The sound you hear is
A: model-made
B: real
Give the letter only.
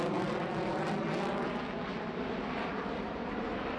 B